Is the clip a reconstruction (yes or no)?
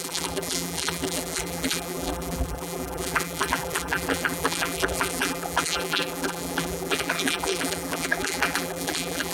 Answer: yes